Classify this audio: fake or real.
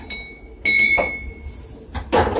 real